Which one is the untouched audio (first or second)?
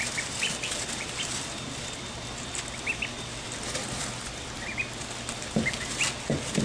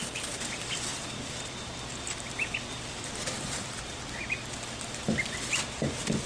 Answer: first